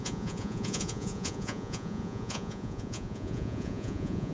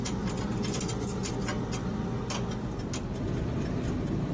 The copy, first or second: first